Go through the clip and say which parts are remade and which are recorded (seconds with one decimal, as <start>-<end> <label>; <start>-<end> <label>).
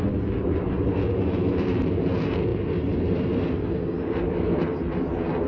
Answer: 0.0-5.5 recorded